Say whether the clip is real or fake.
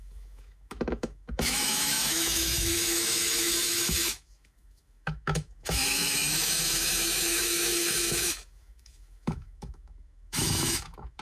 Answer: fake